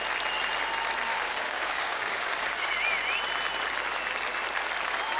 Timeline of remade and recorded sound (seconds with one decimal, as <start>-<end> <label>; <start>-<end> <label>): 0.0-1.1 recorded; 1.1-2.7 remade; 2.7-5.2 recorded